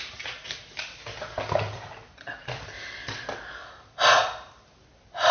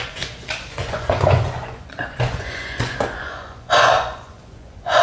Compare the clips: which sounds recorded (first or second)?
first